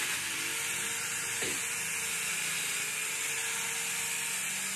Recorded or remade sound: recorded